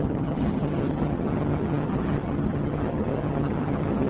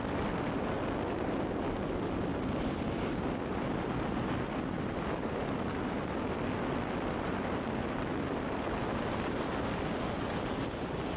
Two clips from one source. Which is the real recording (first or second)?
second